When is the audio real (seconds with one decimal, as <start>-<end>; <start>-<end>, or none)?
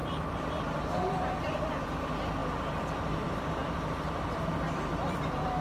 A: 1.9-2.4